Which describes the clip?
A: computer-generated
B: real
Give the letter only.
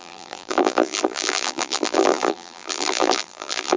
A